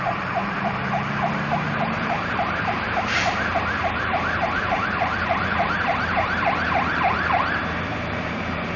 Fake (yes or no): yes